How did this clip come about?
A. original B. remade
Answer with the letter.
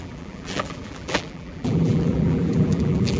B